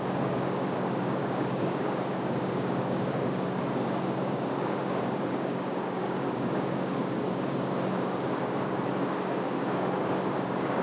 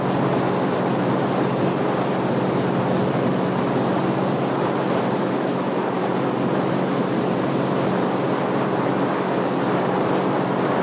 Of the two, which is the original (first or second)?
second